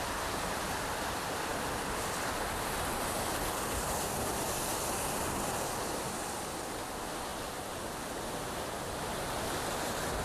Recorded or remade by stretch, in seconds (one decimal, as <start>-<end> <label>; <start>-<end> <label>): 0.0-10.2 recorded